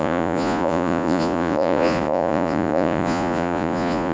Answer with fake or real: fake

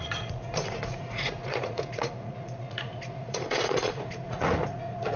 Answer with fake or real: fake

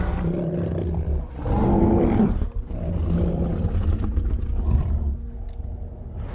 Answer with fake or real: real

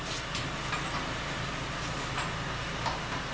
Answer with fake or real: real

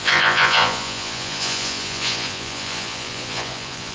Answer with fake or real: fake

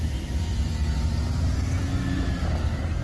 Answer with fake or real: real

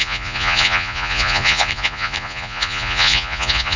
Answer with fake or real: fake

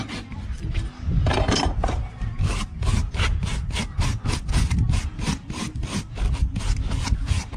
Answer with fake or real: real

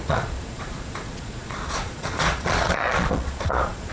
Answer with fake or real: fake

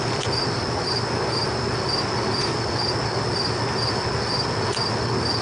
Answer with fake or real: real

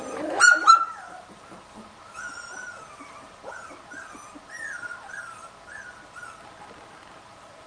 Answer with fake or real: real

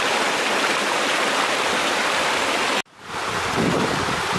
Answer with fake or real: real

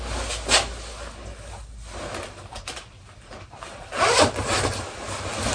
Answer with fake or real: real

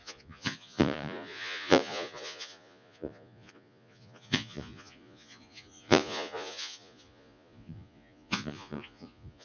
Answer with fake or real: fake